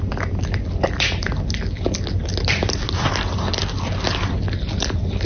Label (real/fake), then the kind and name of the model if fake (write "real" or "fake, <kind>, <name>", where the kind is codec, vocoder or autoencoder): real